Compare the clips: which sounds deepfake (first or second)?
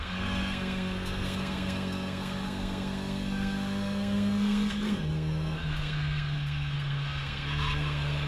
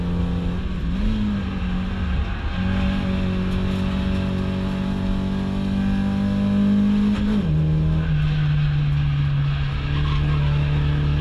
first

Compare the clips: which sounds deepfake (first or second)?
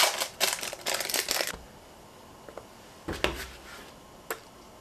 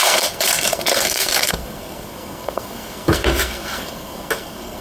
second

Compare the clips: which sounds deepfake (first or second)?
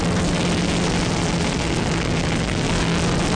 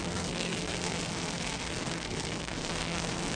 second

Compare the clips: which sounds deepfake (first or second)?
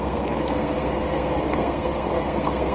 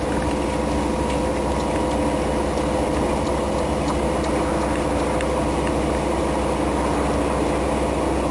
first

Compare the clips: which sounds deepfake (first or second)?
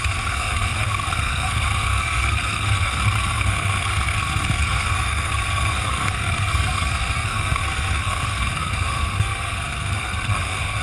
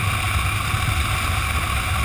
first